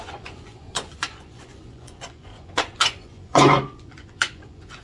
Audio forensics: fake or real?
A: fake